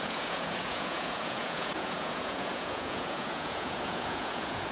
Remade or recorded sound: remade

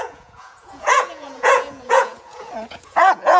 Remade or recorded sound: remade